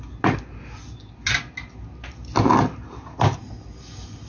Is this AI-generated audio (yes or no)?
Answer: no